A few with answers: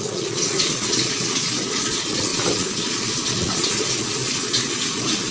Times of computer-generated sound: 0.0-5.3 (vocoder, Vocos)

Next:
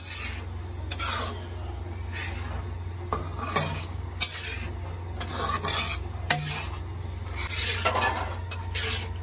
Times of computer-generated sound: 3.7-4.2 (codec, DAC)